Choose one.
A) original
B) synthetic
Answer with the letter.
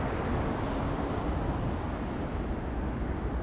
A